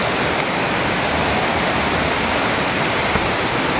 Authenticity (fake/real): real